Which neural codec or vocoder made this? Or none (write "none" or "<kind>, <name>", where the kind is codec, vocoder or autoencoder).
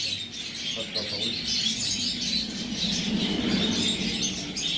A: none